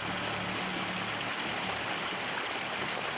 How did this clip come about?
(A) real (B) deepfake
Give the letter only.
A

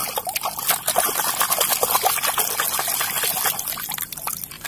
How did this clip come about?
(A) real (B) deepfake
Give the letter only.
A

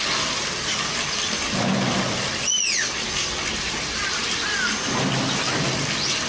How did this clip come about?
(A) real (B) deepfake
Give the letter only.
A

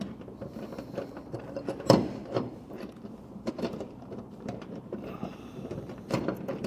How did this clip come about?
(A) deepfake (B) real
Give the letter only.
A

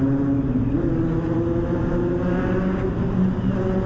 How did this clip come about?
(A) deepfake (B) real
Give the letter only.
B